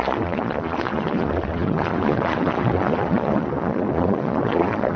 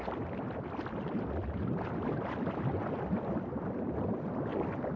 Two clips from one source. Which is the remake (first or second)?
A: first